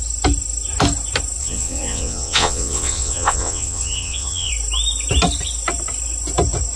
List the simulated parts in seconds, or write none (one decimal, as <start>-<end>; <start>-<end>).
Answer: 1.4-4.5